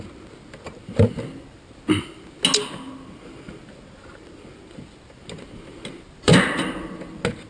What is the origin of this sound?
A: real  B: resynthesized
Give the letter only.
A